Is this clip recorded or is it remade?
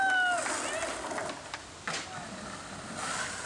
recorded